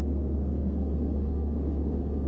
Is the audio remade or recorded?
remade